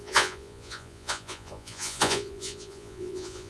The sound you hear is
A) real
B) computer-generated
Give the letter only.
B